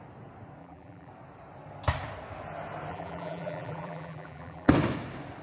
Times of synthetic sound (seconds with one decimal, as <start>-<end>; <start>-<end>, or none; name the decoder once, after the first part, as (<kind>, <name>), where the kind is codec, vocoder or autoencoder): 0.6-1.1 (vocoder, BigVGAN v2); 2.9-4.7